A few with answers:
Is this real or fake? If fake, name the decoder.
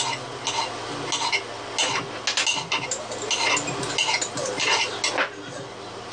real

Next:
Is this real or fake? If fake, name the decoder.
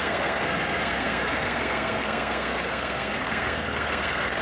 fake, codec, SNAC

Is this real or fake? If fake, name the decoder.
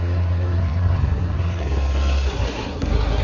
fake, codec, SNAC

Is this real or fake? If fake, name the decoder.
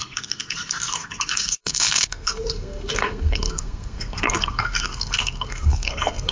fake, codec, SNAC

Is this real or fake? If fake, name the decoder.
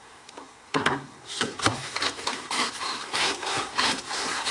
fake, codec, SNAC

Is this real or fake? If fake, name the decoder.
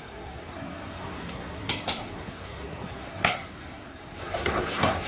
fake, codec, SNAC